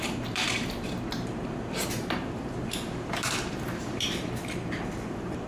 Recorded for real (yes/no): no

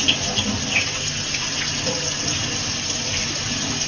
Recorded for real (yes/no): yes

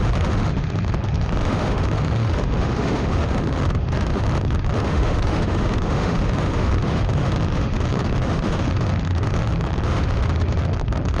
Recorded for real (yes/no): no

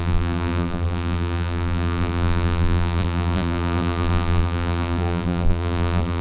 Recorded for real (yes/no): no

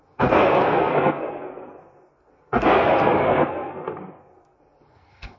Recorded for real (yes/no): no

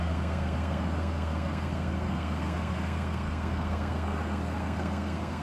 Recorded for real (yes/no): no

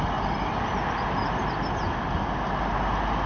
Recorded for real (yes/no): yes